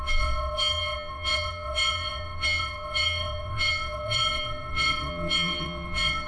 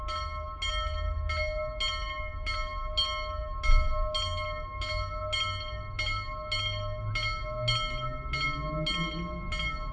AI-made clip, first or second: first